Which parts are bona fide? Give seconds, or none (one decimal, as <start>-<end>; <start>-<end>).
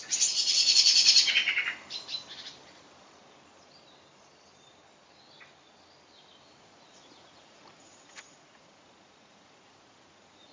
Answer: 1.4-6.6